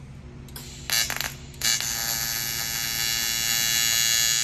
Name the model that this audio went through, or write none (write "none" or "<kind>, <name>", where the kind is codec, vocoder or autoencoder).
none